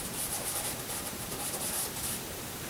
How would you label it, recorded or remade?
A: remade